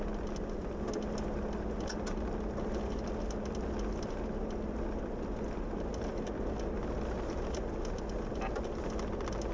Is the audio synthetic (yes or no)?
no